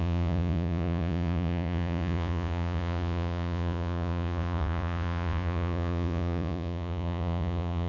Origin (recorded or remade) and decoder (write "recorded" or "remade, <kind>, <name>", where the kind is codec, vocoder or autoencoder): remade, vocoder, Vocos